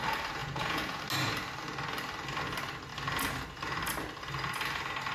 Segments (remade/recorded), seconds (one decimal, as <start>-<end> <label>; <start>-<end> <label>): 0.0-0.4 recorded; 0.4-1.0 remade; 1.0-5.1 recorded